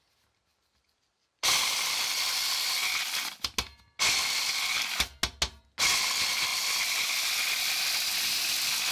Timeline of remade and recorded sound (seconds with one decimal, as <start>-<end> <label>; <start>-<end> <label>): 0.0-0.5 recorded; 0.5-2.1 remade; 2.1-6.5 recorded; 6.5-7.8 remade; 7.8-8.9 recorded